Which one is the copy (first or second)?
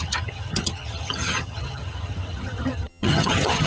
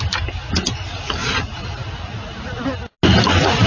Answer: first